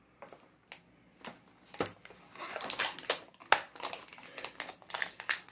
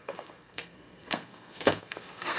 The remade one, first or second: second